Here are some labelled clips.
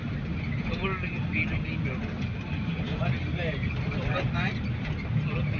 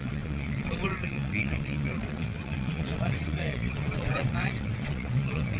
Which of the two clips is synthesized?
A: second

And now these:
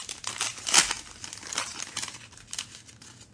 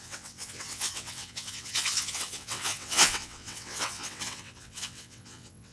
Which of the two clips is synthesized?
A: second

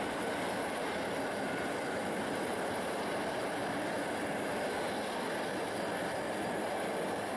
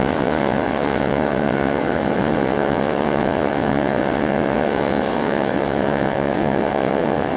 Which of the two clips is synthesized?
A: second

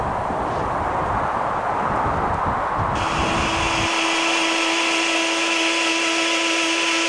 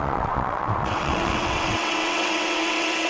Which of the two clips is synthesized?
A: second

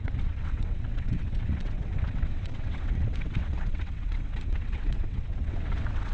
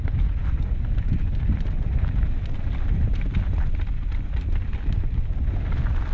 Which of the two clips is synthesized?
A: first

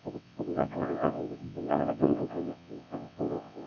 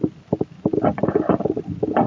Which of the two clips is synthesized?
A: first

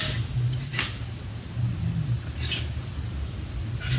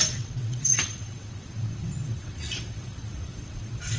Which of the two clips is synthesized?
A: second